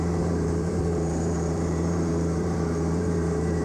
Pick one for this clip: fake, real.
fake